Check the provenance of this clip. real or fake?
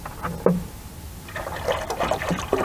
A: real